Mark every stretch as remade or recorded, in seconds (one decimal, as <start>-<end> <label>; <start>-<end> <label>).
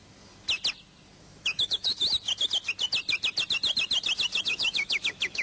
0.0-1.2 recorded; 1.2-1.9 remade; 1.9-4.4 recorded; 4.4-5.4 remade